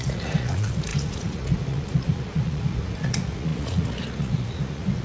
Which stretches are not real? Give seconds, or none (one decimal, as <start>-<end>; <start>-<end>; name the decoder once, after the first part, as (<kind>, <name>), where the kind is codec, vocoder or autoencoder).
0.0-5.0 (vocoder, Vocos)